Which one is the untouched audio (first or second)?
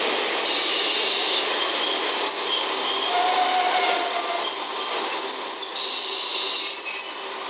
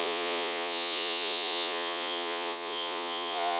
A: first